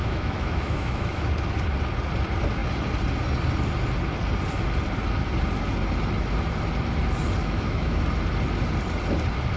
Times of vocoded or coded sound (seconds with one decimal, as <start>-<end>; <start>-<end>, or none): 0.0-1.3; 7.4-8.0